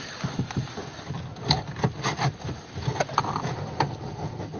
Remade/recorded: recorded